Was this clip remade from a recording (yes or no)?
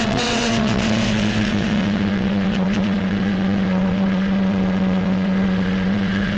yes